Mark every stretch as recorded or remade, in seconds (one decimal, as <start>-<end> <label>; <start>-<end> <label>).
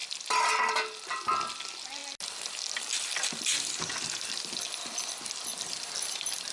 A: 0.0-6.5 recorded